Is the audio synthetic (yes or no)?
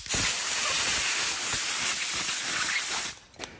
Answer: no